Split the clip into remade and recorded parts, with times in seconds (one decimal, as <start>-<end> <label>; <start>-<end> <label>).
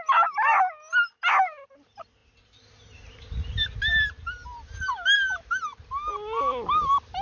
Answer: 0.0-7.2 recorded